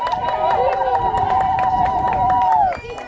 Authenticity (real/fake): real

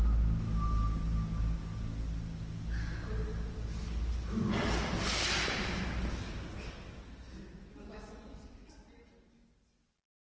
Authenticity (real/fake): real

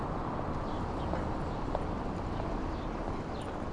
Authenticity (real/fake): real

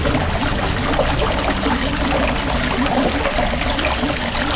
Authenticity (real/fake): real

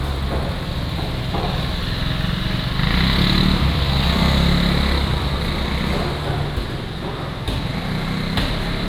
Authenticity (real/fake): real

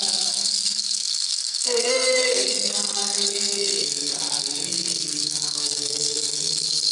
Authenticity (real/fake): fake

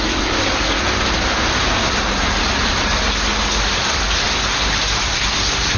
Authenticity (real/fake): real